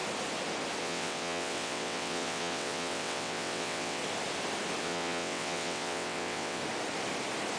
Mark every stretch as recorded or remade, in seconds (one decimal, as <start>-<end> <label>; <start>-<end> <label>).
0.0-0.8 recorded; 0.8-4.0 remade; 4.0-4.8 recorded; 4.8-6.6 remade; 6.6-7.6 recorded